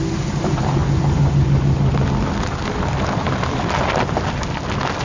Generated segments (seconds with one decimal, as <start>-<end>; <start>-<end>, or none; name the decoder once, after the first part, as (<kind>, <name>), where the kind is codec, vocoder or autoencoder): none